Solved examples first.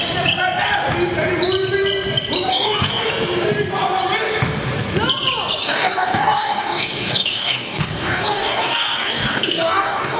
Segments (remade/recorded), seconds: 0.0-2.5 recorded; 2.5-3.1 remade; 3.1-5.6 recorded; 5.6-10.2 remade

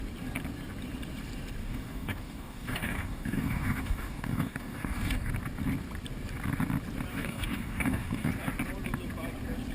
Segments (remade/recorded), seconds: 0.0-1.6 recorded; 1.6-5.3 remade; 5.3-7.1 recorded; 7.1-8.3 remade; 8.3-9.7 recorded

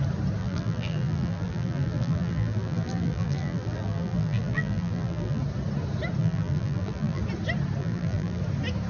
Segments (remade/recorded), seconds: 0.0-0.4 recorded; 0.4-5.4 remade; 5.4-6.2 recorded; 6.2-7.2 remade; 7.2-7.8 recorded; 7.8-8.4 remade; 8.4-8.9 recorded